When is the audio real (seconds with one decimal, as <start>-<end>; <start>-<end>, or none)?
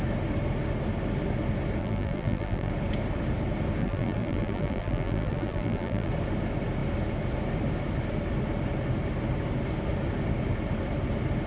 0.0-1.8; 2.7-3.8; 6.1-11.5